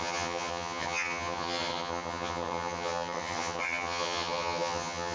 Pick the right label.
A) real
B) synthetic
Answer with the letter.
B